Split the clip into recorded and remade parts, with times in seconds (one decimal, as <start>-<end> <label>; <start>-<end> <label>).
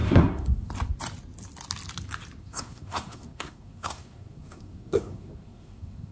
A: 0.0-0.7 remade; 0.7-2.4 recorded; 2.4-6.1 remade